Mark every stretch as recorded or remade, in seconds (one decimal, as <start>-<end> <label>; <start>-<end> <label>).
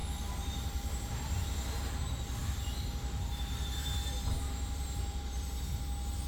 0.0-1.8 remade; 1.8-2.4 recorded; 2.4-5.8 remade; 5.8-6.3 recorded